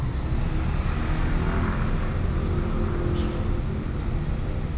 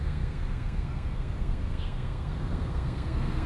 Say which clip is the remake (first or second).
second